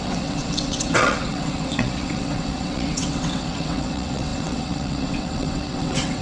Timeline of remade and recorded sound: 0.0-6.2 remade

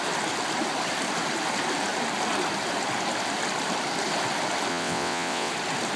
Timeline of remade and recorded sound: 0.0-4.7 recorded; 4.7-5.5 remade; 5.5-6.0 recorded

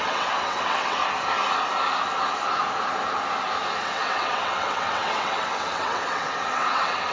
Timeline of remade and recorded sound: 0.0-1.0 remade; 1.0-3.8 recorded; 3.8-7.1 remade